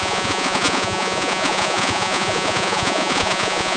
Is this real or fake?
fake